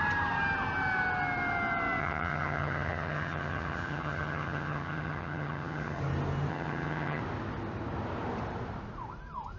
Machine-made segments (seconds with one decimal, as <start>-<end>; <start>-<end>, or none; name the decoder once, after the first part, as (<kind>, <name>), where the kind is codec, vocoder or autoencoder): 2.0-6.0 (vocoder, HiFi-GAN); 6.5-7.2